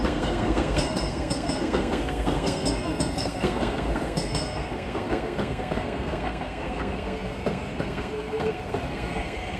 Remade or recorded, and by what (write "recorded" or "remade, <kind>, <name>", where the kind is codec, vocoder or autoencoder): remade, codec, SNAC